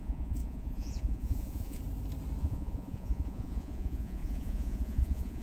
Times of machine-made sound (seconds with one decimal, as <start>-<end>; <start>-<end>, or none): 0.0-1.8; 2.4-5.4